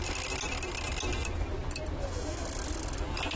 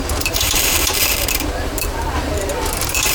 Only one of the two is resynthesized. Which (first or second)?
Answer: second